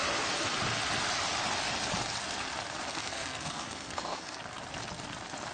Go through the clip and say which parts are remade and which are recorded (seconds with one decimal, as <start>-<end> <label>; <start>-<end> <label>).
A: 0.0-3.0 recorded; 3.0-4.4 remade; 4.4-5.5 recorded